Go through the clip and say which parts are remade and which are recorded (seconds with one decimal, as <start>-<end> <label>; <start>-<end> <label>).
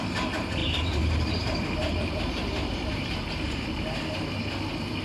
0.0-0.6 recorded; 0.6-3.6 remade; 3.6-5.0 recorded